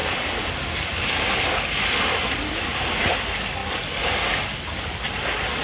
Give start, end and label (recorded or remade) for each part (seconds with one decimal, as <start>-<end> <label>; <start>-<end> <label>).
0.0-5.6 recorded